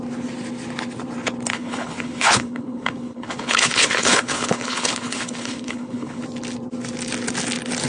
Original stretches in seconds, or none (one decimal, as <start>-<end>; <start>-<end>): 0.0-1.5; 6.2-7.9